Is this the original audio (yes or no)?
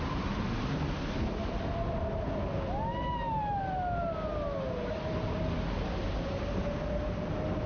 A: yes